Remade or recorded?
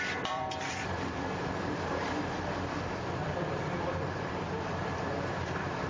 remade